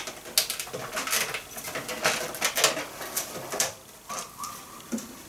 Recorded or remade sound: recorded